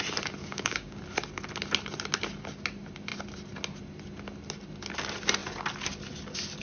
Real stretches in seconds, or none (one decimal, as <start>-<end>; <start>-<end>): 0.0-0.4; 1.0-6.6